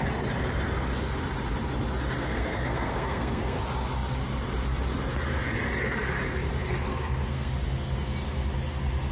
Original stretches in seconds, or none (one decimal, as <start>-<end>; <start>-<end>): 0.0-2.2; 3.6-6.9; 7.5-9.1